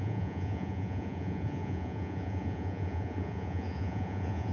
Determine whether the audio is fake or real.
fake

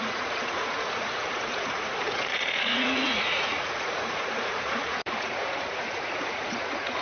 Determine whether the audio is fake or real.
fake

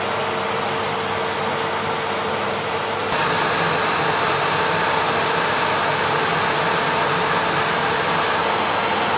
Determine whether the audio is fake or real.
real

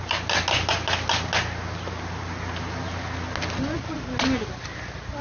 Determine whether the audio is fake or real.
real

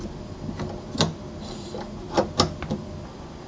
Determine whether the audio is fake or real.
real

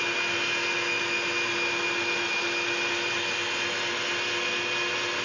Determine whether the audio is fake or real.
real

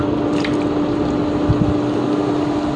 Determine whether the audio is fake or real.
real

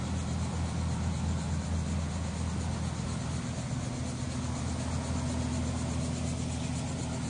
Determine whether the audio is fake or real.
real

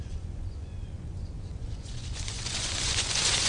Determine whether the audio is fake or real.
fake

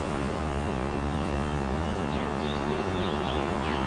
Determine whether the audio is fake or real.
fake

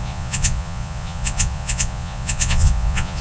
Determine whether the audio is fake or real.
fake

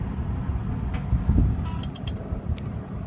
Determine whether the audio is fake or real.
real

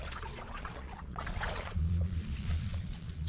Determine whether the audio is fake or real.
fake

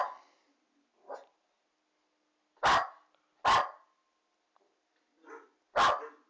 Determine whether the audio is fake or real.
real